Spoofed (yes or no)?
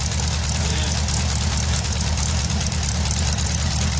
no